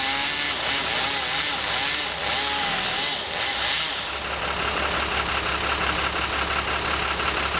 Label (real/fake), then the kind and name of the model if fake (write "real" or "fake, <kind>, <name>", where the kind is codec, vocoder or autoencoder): real